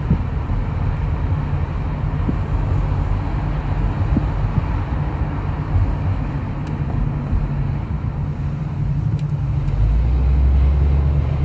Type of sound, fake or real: real